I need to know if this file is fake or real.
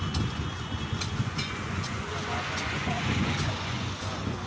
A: fake